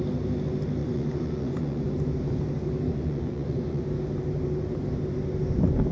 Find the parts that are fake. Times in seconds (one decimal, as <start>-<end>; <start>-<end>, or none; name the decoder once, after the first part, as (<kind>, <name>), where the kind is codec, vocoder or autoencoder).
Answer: 0.8-1.9 (vocoder, Vocos); 2.9-3.8